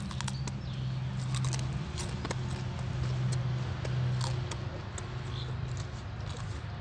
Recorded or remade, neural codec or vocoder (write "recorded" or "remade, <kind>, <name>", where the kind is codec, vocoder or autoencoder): recorded